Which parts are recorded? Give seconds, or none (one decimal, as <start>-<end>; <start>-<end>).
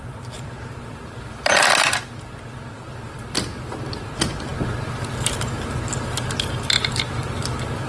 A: 4.5-6.9